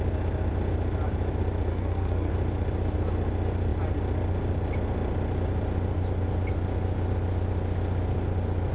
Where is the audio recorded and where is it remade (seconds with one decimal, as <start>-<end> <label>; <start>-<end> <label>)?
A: 0.0-1.7 recorded; 1.7-2.3 remade; 2.3-8.7 recorded